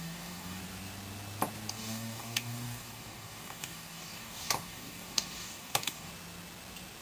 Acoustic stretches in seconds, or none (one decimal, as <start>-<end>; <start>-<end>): 0.6-1.7; 6.1-7.0